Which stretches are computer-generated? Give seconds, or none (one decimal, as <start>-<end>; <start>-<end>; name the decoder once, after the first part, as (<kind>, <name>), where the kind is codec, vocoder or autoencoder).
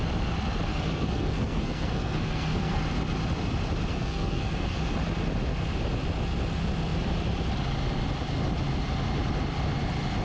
0.7-2.8 (codec, SNAC); 3.9-4.8